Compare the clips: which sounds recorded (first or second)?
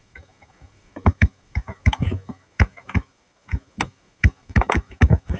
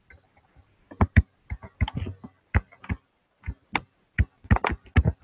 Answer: second